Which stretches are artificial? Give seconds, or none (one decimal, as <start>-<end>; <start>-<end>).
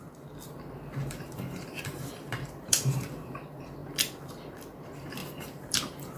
1.0-3.3; 5.2-6.2